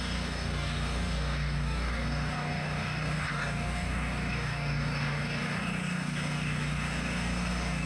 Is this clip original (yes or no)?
no